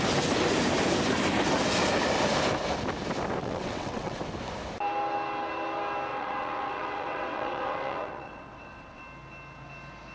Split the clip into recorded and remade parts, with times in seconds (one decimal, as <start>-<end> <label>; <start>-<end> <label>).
0.0-3.4 recorded; 3.4-4.2 remade; 4.2-6.1 recorded; 6.1-9.0 remade; 9.0-10.1 recorded